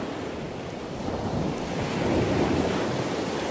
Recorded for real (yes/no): yes